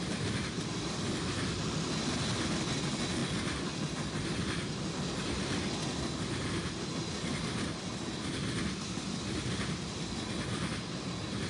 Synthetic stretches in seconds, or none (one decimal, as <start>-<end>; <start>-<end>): none